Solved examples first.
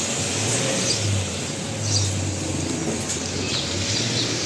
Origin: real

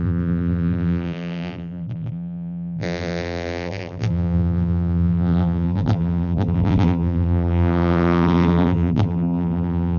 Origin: fake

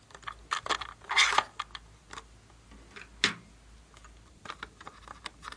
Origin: real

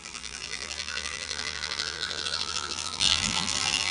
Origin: fake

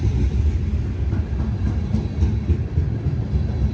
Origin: real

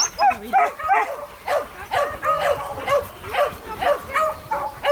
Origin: real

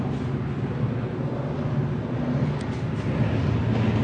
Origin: real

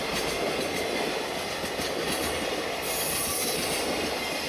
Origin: real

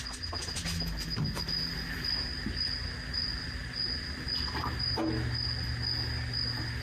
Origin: real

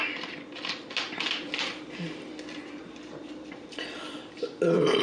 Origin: real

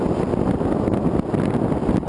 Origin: real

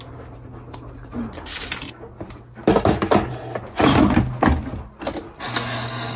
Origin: real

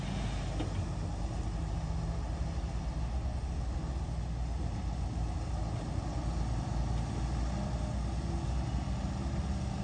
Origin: real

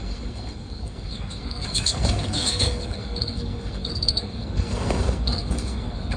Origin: fake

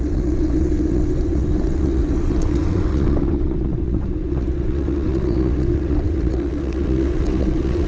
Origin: fake